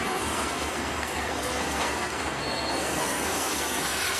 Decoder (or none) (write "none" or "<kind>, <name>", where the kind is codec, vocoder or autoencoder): codec, SNAC